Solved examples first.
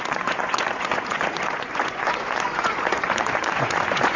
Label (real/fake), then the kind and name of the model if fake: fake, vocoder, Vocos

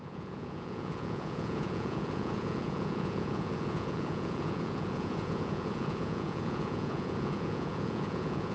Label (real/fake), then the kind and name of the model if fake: fake, vocoder, Vocos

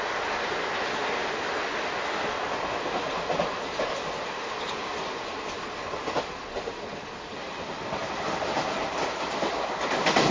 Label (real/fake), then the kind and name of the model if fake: real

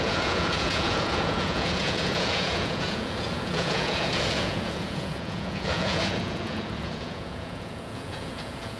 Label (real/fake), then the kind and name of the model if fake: fake, vocoder, Vocos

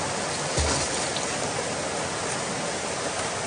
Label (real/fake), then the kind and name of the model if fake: real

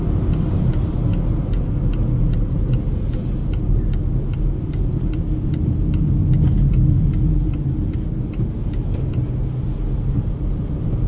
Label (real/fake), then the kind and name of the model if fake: real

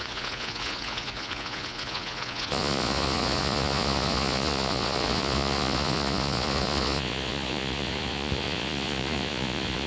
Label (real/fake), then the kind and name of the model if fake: fake, vocoder, Vocos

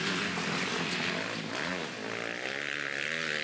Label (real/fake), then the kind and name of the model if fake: real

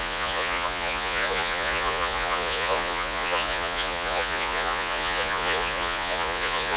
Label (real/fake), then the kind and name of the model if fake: fake, vocoder, Vocos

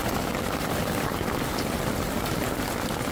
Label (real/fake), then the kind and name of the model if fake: real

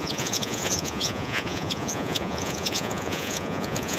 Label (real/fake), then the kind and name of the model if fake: fake, vocoder, Vocos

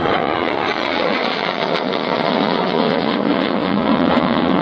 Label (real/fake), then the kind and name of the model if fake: fake, vocoder, Vocos